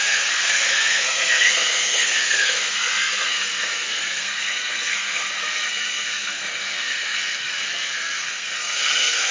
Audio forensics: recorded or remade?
remade